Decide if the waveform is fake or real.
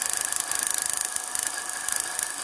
real